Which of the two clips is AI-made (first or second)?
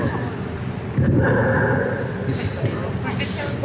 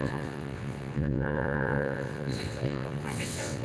second